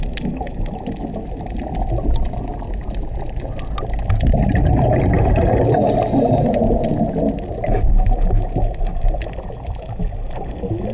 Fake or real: real